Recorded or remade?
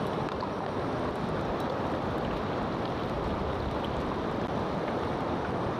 recorded